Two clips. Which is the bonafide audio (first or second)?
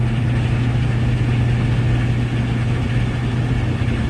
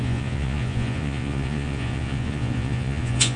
first